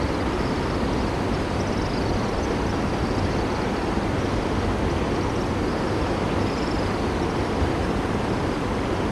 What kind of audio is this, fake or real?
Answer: real